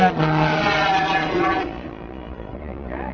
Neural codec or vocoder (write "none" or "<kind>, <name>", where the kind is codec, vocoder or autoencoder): vocoder, Vocos